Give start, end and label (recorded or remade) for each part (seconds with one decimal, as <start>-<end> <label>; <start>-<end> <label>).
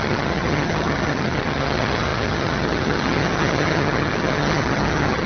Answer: 0.0-5.3 remade